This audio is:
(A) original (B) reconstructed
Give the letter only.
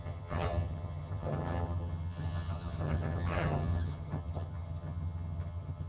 B